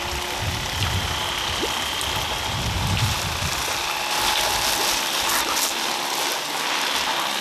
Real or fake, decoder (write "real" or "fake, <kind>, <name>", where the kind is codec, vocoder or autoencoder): real